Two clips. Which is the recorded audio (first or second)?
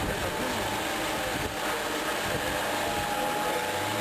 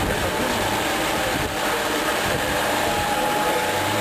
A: first